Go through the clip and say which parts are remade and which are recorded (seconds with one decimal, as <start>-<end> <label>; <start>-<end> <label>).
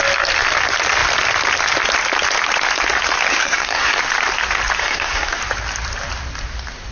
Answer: 0.0-3.3 recorded; 3.3-4.0 remade; 4.0-4.8 recorded; 4.8-5.4 remade; 5.4-6.9 recorded